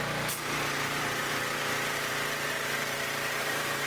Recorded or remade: remade